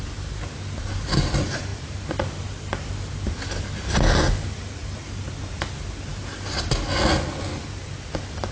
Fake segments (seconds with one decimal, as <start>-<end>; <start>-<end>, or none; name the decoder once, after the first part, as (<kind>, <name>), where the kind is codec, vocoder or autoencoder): none